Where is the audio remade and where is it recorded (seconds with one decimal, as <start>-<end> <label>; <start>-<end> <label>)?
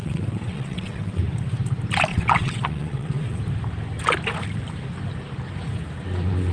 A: 0.0-1.2 remade; 1.2-2.1 recorded; 2.1-3.4 remade; 3.4-6.5 recorded